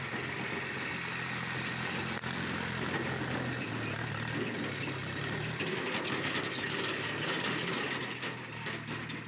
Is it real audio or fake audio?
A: real